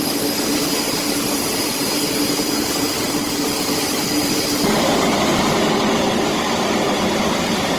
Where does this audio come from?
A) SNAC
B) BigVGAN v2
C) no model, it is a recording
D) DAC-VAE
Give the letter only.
C